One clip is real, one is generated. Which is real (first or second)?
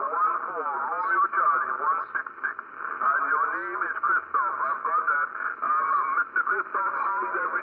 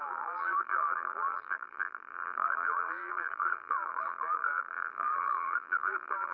first